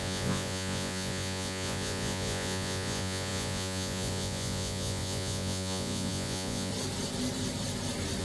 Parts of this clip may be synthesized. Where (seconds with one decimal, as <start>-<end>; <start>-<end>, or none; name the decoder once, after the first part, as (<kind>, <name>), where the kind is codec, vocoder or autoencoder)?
0.0-6.7 (vocoder, Vocos)